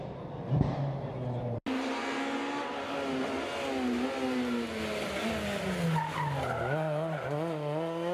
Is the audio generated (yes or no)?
no